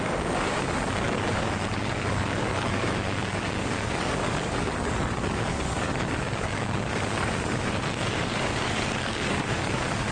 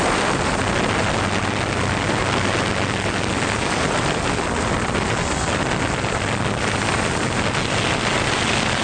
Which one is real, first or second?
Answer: second